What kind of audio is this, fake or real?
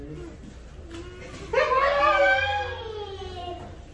real